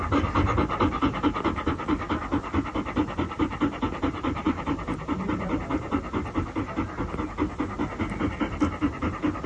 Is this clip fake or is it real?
real